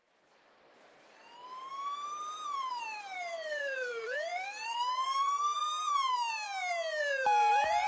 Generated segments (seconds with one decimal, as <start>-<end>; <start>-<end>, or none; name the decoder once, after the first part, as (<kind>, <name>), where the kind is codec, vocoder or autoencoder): 0.0-5.6 (vocoder, BigVGAN v2); 7.5-7.9